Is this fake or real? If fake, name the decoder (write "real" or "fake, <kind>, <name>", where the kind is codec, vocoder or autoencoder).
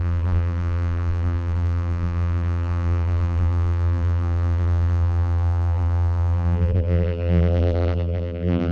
fake, vocoder, BigVGAN v2